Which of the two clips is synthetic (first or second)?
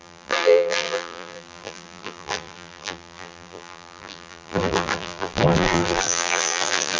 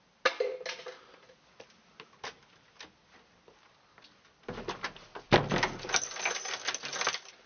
first